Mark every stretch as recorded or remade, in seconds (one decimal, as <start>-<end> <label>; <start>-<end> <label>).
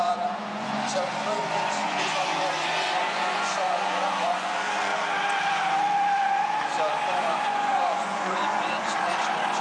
0.0-4.9 remade; 4.9-7.2 recorded; 7.2-9.6 remade